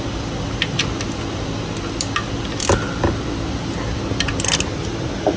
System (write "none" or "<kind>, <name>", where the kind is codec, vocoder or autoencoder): none